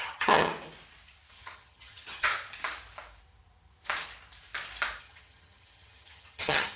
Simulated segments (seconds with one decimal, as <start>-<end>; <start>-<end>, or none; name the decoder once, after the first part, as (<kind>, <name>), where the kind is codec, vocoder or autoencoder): 0.0-0.5 (vocoder, HiFi-GAN); 1.3-2.3; 5.0-6.8